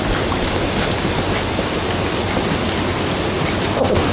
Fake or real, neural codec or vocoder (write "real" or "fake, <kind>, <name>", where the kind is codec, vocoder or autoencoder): real